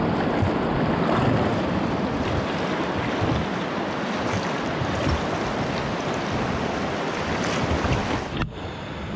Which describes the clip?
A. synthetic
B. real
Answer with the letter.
B